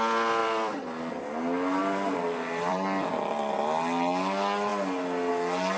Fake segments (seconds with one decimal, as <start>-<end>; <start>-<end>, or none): 0.4-1.1; 1.8-3.6